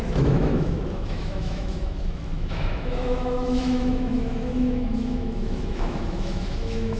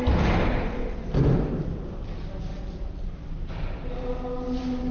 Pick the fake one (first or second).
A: first